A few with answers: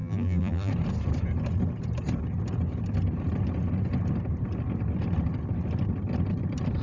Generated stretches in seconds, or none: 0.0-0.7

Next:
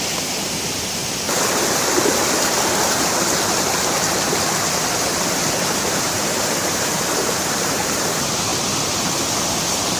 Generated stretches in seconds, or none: 0.0-1.0; 5.7-10.0

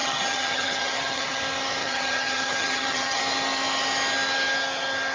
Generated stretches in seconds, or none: 0.0-1.4; 1.8-3.2

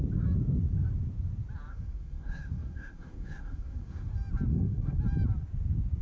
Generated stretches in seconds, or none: 1.7-4.1; 4.5-5.0

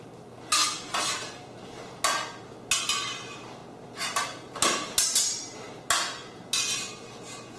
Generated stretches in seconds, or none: none